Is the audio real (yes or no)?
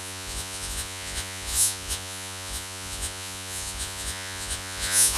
no